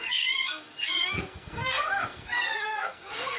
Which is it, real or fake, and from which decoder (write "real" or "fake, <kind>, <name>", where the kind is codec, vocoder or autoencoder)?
fake, codec, SNAC